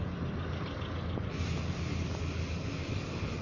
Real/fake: real